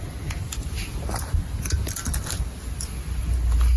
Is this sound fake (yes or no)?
yes